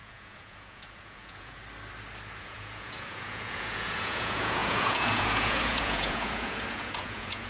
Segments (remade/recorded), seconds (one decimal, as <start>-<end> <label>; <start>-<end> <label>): 0.0-1.6 remade; 1.6-2.4 recorded; 2.4-7.5 remade